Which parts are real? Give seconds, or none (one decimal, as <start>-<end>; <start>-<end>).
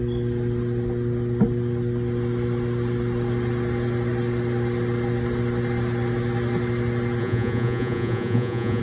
0.0-7.2